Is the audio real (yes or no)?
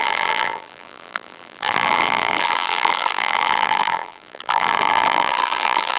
no